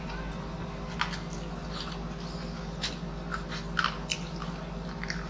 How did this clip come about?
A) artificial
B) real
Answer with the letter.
B